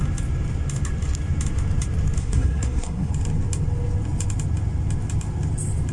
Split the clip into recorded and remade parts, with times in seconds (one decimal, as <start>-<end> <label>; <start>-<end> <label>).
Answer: 0.0-2.2 recorded; 2.2-3.1 remade; 3.1-5.9 recorded